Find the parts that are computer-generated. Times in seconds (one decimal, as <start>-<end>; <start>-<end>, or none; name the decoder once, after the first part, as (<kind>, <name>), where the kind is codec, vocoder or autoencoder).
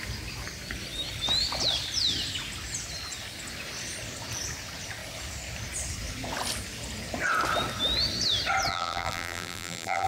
8.7-10.1 (vocoder, BigVGAN v2)